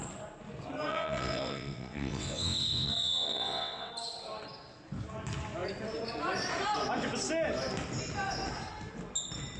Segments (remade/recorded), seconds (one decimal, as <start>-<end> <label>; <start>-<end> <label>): 0.0-0.9 recorded; 0.9-3.9 remade; 3.9-9.6 recorded